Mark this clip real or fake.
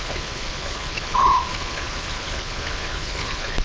fake